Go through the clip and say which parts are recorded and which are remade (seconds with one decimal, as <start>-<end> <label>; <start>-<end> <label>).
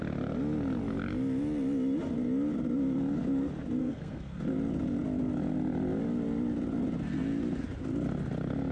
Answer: 0.0-3.8 recorded; 3.8-4.4 remade; 4.4-8.7 recorded